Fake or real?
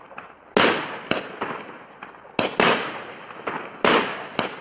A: real